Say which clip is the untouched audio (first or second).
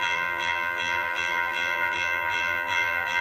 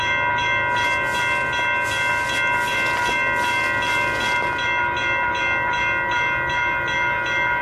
second